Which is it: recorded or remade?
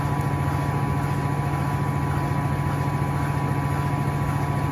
recorded